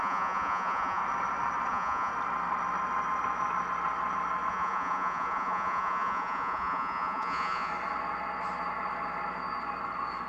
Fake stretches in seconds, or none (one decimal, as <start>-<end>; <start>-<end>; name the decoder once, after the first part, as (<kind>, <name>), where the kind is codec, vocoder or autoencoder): 0.0-1.0 (vocoder, Vocos); 1.7-2.1; 4.5-7.7